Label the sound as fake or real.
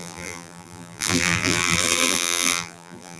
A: fake